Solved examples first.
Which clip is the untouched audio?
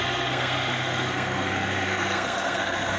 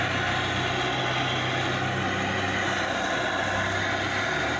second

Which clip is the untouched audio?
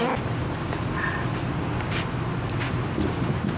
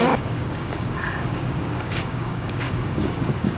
first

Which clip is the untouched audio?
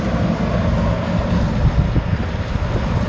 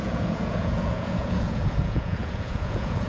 first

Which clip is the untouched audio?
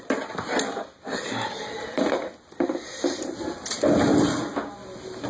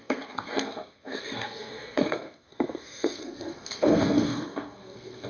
first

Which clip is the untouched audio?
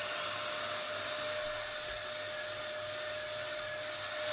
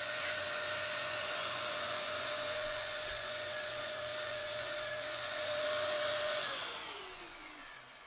first